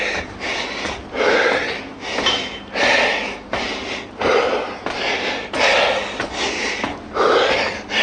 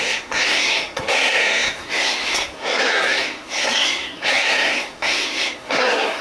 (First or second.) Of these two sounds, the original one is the first